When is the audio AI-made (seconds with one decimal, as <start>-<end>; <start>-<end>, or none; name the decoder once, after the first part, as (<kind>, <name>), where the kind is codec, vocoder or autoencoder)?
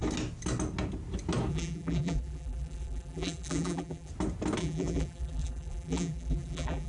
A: 1.5-4.1 (vocoder, BigVGAN v2); 4.6-6.9